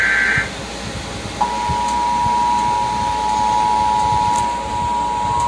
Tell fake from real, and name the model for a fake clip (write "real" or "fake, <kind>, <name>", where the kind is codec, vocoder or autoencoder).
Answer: real